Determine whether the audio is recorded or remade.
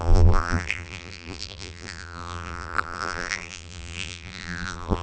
remade